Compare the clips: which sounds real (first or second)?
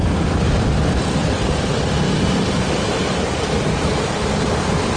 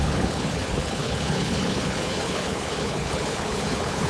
first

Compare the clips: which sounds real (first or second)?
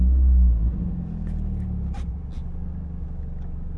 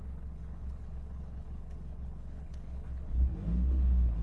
first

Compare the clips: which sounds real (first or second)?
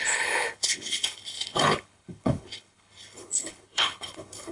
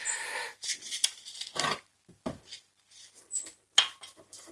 second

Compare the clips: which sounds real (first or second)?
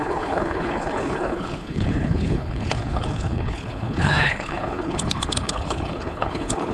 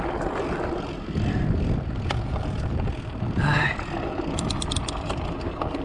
second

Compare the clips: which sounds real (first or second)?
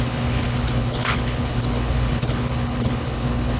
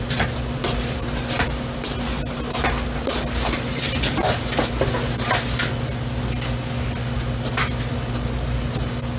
second